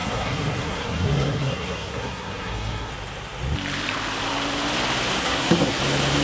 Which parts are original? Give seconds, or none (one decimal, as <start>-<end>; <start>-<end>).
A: 2.9-5.2; 5.8-6.2